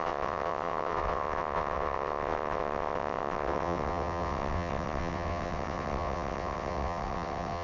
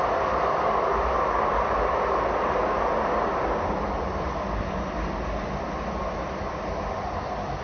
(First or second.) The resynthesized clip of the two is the first